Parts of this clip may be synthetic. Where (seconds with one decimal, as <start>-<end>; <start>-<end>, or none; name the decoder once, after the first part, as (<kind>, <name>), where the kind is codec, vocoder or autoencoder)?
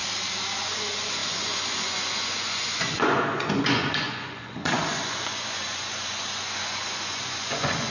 0.6-7.9 (vocoder, Vocos)